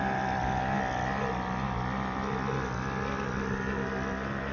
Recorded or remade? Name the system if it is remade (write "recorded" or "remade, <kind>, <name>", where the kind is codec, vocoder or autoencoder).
recorded